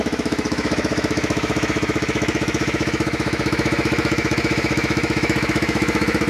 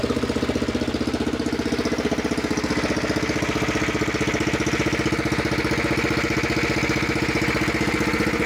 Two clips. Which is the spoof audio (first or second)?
first